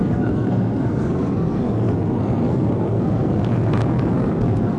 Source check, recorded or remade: remade